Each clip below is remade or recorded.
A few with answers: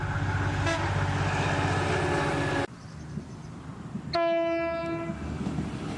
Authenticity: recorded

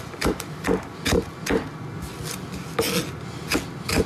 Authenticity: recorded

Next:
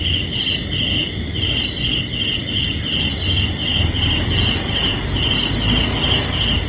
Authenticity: recorded